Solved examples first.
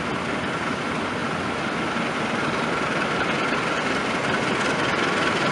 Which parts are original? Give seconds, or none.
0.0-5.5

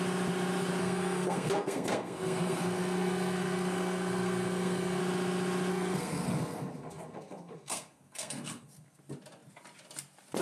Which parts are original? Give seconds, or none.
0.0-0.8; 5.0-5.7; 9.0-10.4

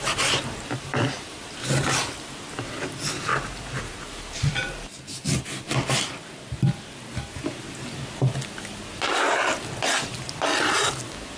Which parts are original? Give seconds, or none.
4.9-9.1; 10.1-10.6

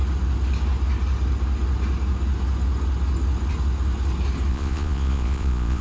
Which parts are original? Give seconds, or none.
0.0-4.5